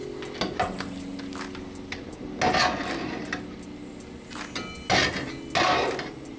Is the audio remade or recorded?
recorded